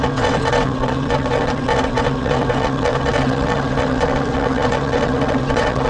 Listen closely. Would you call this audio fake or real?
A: fake